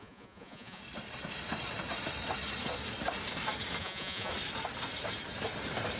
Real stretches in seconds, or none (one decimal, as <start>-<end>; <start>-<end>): 0.8-3.8; 4.3-6.0